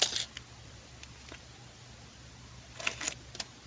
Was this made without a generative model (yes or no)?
yes